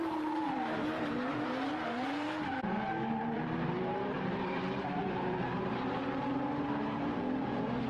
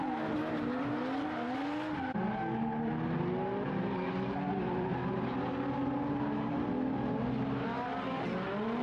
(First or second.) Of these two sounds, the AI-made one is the first